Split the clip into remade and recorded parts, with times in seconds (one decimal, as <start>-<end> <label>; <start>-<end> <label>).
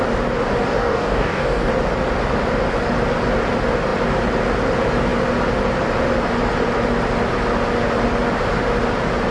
0.0-0.6 recorded; 0.6-1.7 remade; 1.7-9.3 recorded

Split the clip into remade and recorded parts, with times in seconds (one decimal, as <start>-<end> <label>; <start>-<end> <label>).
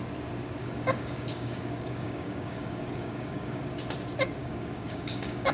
0.0-0.6 recorded; 0.6-3.6 remade; 3.6-4.4 recorded; 4.4-5.5 remade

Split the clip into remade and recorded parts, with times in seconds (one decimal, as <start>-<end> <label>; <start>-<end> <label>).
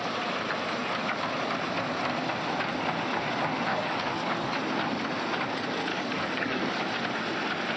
0.0-3.7 recorded; 3.7-4.6 remade; 4.6-5.9 recorded; 5.9-6.8 remade; 6.8-7.8 recorded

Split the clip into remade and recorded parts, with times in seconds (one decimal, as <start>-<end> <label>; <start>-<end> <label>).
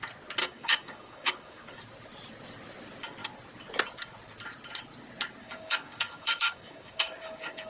0.0-0.4 recorded; 0.4-1.8 remade; 1.8-5.4 recorded; 5.4-7.7 remade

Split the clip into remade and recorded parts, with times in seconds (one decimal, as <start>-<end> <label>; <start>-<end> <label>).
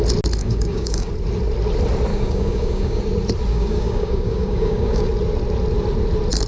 0.0-0.4 recorded; 0.4-1.1 remade; 1.1-2.1 recorded; 2.1-3.0 remade; 3.0-3.5 recorded; 3.5-5.1 remade; 5.1-6.5 recorded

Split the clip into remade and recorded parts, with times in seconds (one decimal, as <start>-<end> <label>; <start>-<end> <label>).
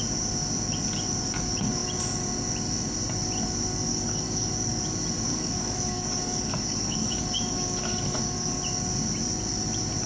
0.0-3.9 recorded; 3.9-4.5 remade; 4.5-5.3 recorded; 5.3-8.5 remade; 8.5-10.1 recorded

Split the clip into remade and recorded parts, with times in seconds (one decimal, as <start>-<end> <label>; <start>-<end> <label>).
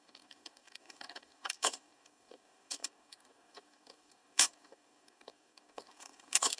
0.0-6.6 remade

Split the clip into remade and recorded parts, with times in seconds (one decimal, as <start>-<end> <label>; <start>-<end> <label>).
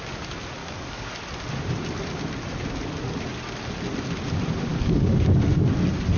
0.0-0.6 recorded; 0.6-1.1 remade; 1.1-4.7 recorded; 4.7-5.4 remade; 5.4-6.2 recorded